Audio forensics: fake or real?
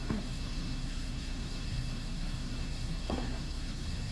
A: fake